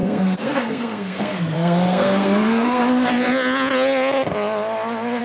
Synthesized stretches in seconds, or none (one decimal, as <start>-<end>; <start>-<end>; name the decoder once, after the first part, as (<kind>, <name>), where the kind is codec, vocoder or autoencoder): 0.0-2.8 (codec, SNAC)